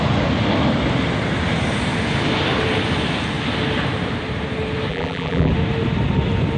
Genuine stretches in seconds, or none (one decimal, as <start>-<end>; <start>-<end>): 0.0-4.9; 5.5-6.6